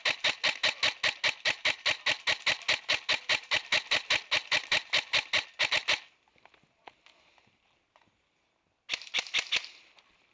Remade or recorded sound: recorded